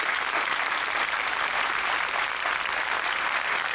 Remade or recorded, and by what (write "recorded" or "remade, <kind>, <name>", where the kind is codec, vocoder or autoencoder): remade, vocoder, BigVGAN v2